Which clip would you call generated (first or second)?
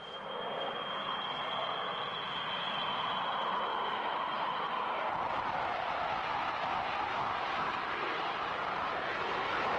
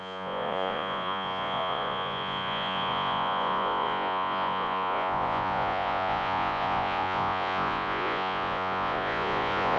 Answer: second